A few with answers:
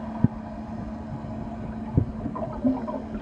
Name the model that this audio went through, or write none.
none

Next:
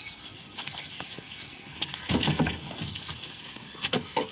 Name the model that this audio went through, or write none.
codec, SNAC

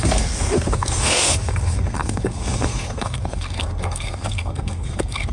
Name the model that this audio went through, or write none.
codec, SNAC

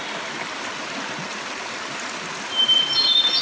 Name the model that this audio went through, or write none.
none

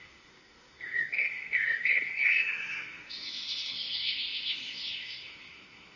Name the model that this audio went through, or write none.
codec, SNAC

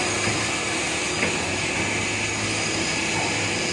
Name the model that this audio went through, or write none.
none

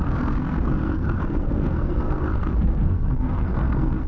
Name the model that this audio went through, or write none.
codec, SNAC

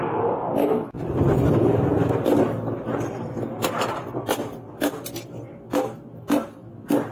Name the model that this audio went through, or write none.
none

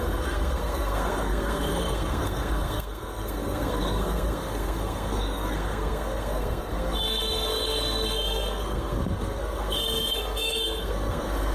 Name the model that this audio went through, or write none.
codec, SNAC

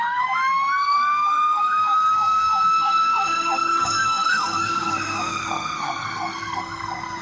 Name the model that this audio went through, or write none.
codec, SNAC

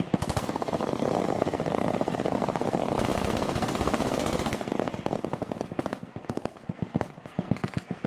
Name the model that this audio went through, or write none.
codec, SNAC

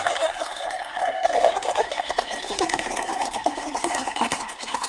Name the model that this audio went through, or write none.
codec, SNAC